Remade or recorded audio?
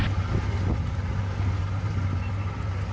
recorded